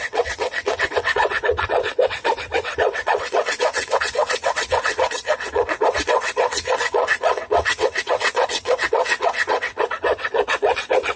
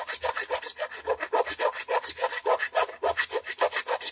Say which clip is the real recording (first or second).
second